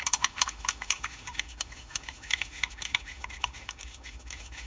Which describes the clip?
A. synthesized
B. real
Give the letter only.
A